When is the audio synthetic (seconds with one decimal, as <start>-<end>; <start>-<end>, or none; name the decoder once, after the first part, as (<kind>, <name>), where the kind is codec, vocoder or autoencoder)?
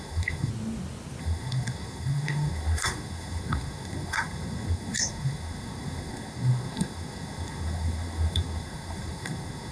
0.0-0.5 (codec, SNAC); 1.2-9.7